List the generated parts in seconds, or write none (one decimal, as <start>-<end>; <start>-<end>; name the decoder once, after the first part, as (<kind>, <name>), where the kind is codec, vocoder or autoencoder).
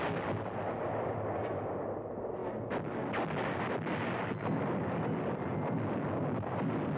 none